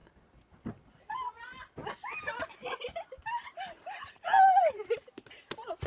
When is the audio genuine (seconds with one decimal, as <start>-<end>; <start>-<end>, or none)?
0.0-5.9